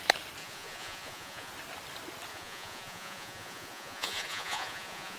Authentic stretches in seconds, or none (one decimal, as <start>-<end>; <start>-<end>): 0.0-0.4; 1.5-2.3